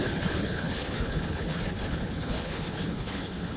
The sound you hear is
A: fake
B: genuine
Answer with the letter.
A